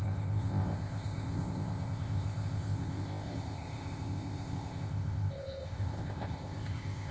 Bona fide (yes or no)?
no